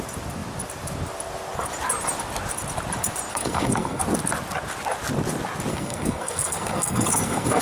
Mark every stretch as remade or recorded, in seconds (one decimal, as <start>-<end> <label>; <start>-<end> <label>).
0.0-3.3 recorded; 3.3-4.0 remade; 4.0-5.7 recorded; 5.7-7.6 remade